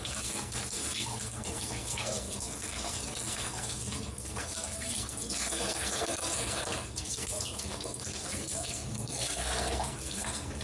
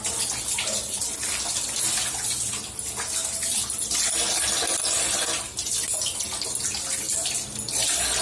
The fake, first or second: first